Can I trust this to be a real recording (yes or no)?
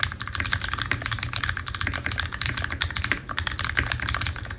no